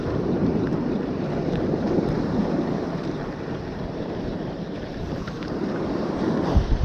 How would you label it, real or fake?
fake